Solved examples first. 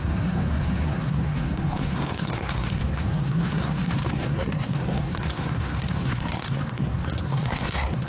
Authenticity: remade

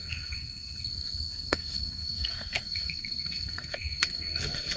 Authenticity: remade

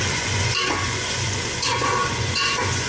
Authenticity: remade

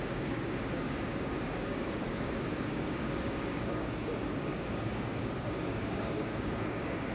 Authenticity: remade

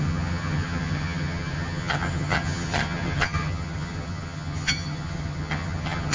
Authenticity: remade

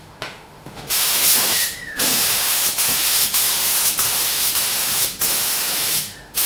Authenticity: remade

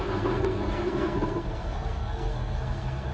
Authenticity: remade